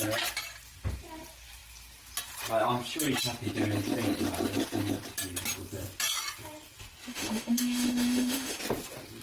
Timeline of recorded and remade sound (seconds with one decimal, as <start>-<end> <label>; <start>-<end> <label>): 0.0-7.1 recorded; 7.1-8.6 remade; 8.6-9.2 recorded